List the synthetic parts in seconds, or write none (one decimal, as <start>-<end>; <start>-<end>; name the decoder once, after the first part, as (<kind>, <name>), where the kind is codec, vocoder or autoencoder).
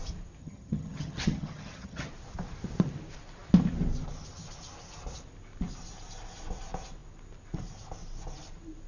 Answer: 0.4-2.1 (vocoder, HiFi-GAN)